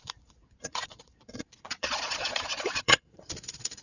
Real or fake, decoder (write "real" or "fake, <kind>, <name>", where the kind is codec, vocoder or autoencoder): fake, vocoder, Vocos